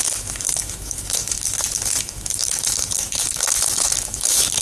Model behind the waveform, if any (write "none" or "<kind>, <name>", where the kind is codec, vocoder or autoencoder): autoencoder, DAC-VAE